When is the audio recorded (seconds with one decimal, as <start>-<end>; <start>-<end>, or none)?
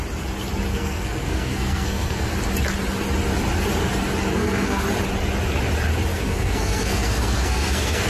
0.0-0.7; 2.3-4.3; 4.8-6.1